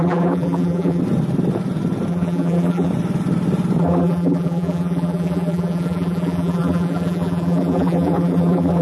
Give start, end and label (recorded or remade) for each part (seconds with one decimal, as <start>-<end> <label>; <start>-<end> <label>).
0.0-1.0 remade; 1.0-2.1 recorded; 2.1-2.9 remade; 2.9-3.8 recorded; 3.8-8.8 remade